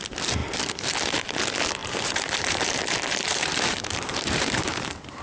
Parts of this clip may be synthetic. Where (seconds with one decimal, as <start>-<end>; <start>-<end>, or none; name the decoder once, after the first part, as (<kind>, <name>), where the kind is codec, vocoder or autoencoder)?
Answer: 1.8-5.2 (vocoder, BigVGAN v2)